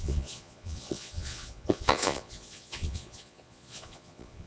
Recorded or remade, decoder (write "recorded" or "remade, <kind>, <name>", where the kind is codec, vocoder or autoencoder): remade, vocoder, Vocos